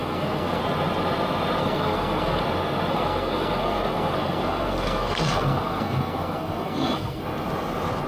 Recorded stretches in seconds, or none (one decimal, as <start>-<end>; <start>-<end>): 0.6-1.6; 2.4-2.9; 7.2-8.1